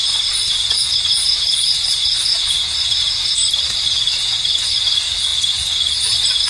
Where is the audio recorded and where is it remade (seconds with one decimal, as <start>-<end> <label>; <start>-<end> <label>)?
0.0-6.5 recorded